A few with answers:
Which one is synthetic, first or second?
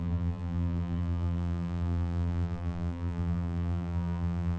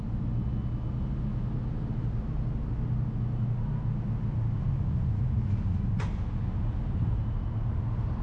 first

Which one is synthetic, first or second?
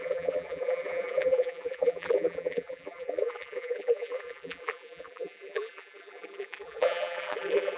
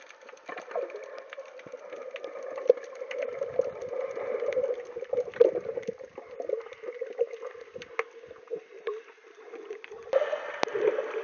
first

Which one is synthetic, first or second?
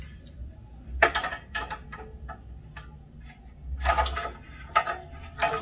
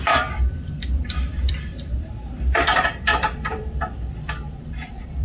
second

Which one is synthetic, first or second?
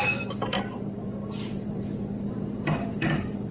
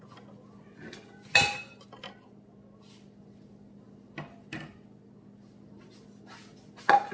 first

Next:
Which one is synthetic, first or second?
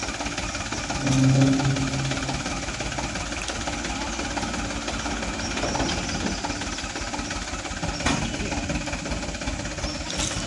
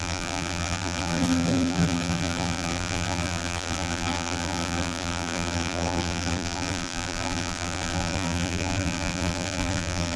second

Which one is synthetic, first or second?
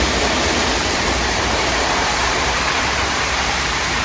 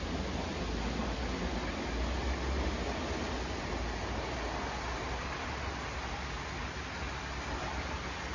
first